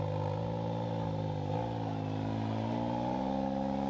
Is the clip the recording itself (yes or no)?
yes